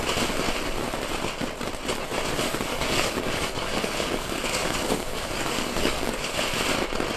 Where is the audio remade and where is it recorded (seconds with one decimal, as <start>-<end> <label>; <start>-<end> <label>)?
0.0-2.7 recorded; 2.7-6.4 remade; 6.4-7.2 recorded